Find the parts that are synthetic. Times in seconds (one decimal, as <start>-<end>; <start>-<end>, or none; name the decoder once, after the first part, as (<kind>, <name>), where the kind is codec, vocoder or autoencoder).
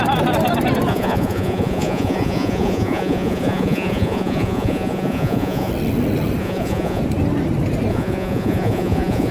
0.9-5.7 (vocoder, Vocos); 6.4-7.0; 7.9-9.3